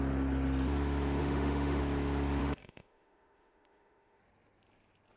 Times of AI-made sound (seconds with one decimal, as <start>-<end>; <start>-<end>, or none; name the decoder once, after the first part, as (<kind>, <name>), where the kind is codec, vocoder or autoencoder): 1.2-1.8 (autoencoder, DAC-VAE); 2.4-4.2

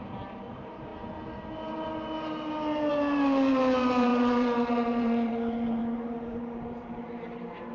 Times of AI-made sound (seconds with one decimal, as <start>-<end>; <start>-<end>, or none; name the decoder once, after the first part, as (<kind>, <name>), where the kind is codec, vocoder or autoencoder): 0.0-0.9 (vocoder, BigVGAN v2); 2.9-7.7

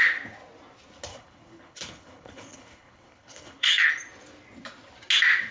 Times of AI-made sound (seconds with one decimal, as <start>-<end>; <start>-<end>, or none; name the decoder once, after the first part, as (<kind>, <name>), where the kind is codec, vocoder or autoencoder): 1.1-3.9 (codec, HILCodec)

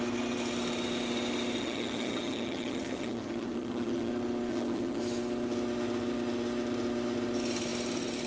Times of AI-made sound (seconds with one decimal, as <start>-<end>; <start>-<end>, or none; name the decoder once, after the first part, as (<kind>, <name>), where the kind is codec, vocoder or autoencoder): 1.6-4.1 (vocoder, HiFi-GAN); 4.5-5.0

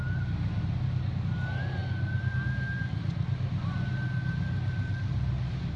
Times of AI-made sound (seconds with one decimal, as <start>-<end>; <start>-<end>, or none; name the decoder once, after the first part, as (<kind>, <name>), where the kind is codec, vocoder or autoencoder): none

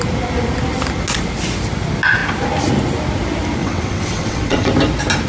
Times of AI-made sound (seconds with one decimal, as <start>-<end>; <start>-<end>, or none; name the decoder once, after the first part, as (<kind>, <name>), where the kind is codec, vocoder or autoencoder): 3.6-4.7 (vocoder, WaveNeXt)

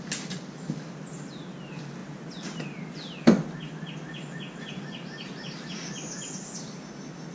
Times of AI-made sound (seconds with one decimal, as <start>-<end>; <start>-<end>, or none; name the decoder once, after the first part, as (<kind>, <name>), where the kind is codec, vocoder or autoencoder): none